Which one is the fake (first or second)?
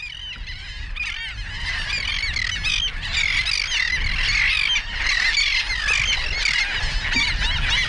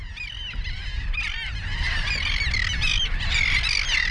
second